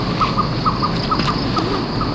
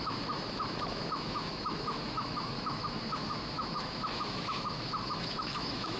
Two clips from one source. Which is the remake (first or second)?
second